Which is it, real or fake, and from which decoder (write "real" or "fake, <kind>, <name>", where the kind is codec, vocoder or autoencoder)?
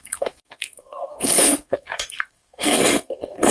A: fake, codec, SNAC